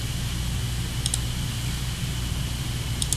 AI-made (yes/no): no